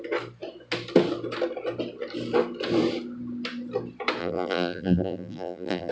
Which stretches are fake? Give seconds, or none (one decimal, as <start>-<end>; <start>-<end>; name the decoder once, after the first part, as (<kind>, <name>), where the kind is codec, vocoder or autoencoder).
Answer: 4.2-5.9 (vocoder, BigVGAN v2)